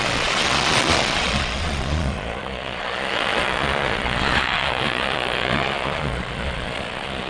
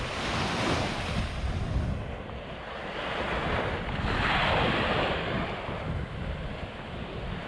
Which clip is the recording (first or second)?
second